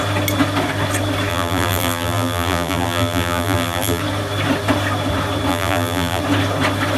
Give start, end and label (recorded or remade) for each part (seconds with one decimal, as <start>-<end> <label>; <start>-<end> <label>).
0.0-1.3 recorded; 1.3-4.0 remade; 4.0-5.5 recorded; 5.5-6.2 remade; 6.2-7.0 recorded